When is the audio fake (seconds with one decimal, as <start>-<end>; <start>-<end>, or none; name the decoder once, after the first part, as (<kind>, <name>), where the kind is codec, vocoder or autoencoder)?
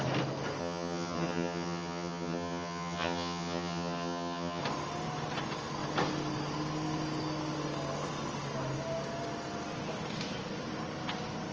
0.6-4.6 (vocoder, HiFi-GAN)